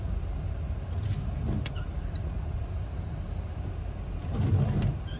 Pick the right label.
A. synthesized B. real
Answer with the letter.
B